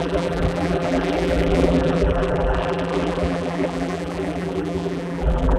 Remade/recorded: remade